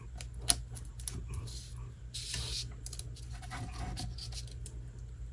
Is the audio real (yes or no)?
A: yes